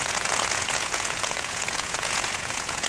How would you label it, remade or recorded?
remade